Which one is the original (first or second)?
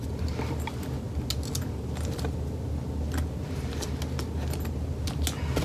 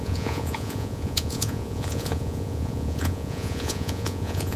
first